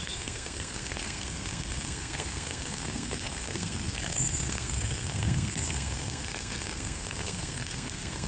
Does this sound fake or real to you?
fake